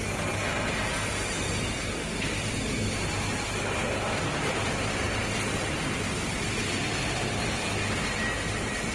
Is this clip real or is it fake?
real